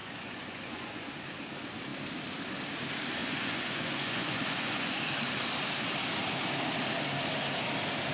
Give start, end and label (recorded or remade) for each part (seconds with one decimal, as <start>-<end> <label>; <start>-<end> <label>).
0.0-1.1 remade; 1.1-3.2 recorded; 3.2-5.1 remade; 5.1-8.1 recorded